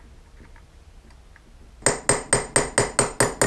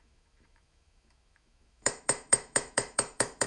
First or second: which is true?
first